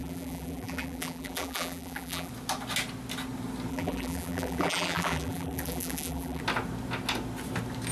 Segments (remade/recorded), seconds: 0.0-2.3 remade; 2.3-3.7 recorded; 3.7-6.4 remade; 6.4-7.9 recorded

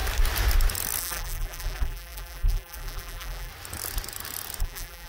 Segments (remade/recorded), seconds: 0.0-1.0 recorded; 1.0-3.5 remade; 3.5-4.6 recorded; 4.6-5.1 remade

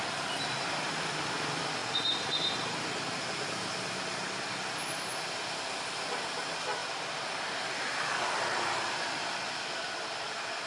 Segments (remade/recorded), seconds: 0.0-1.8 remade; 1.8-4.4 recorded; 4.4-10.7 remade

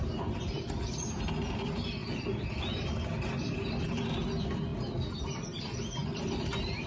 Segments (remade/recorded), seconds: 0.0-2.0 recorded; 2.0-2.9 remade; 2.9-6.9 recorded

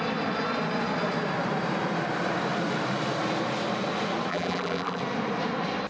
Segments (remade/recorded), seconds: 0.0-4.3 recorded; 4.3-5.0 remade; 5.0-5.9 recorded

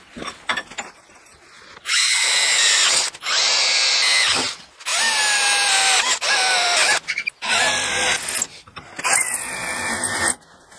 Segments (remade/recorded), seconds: 0.0-0.5 recorded; 0.5-1.1 remade; 1.1-10.8 recorded